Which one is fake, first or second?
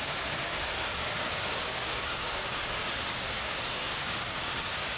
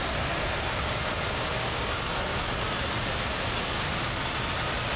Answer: first